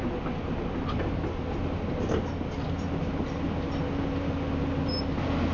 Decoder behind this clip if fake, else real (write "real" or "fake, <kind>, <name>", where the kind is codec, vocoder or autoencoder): real